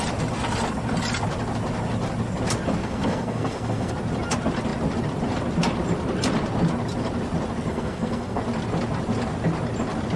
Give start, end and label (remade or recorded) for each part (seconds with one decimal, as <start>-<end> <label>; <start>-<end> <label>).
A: 0.0-2.8 recorded; 2.8-3.9 remade; 3.9-7.7 recorded; 7.7-8.4 remade; 8.4-10.2 recorded